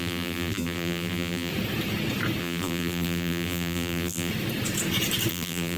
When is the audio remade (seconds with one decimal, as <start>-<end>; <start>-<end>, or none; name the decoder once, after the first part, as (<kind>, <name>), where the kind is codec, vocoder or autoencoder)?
0.0-1.5 (vocoder, BigVGAN v2); 2.4-4.3; 5.3-5.8